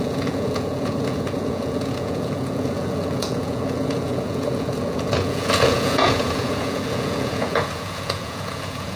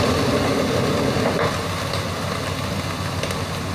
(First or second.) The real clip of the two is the second